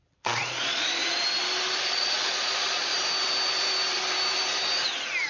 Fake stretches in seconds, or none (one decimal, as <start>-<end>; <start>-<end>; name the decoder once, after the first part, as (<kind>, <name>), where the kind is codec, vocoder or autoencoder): 0.0-1.0 (vocoder, Vocos); 1.9-2.9